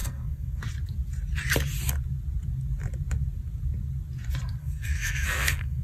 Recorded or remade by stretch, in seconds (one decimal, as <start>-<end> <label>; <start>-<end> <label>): 0.0-0.6 remade; 0.6-4.6 recorded; 4.6-5.8 remade